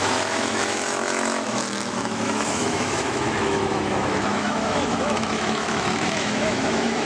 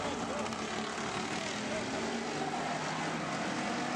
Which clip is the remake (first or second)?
first